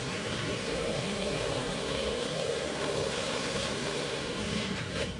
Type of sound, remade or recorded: remade